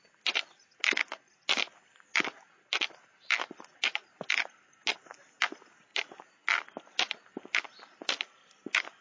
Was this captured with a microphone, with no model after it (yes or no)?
yes